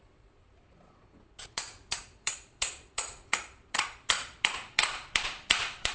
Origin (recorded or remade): remade